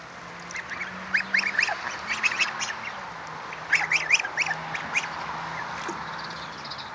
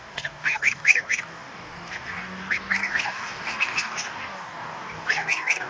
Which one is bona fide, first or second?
first